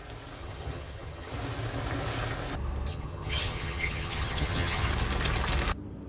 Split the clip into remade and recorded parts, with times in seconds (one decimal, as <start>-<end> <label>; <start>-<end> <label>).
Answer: 0.0-0.4 recorded; 0.4-1.3 remade; 1.3-2.9 recorded; 2.9-4.9 remade; 4.9-6.1 recorded